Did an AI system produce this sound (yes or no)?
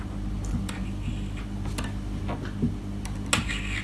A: no